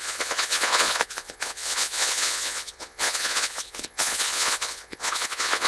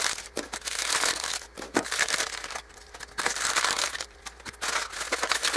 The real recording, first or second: second